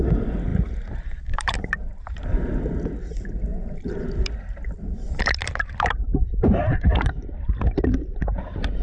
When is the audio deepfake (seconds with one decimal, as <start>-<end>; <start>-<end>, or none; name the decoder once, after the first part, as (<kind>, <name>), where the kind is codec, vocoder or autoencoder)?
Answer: 0.5-2.6 (vocoder, BigVGAN v2); 3.5-8.8